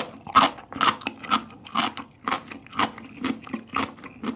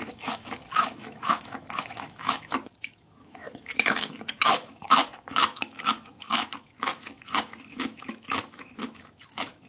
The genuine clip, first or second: first